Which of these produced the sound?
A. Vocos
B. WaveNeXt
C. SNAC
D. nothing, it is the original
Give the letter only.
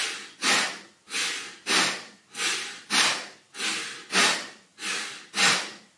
D